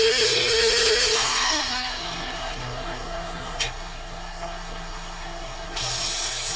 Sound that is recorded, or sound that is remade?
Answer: remade